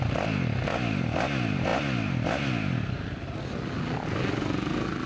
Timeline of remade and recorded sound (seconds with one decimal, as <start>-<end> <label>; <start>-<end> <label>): 0.0-5.1 recorded